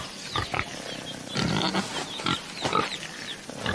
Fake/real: real